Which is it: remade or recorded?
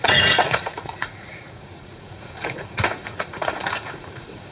remade